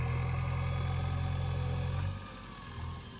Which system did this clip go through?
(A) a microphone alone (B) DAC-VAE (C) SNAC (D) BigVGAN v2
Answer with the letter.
A